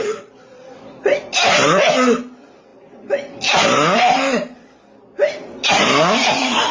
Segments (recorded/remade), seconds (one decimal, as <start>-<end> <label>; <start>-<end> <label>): 0.0-6.7 recorded